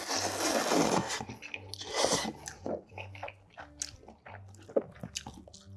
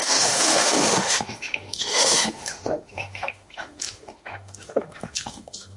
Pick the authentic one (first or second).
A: first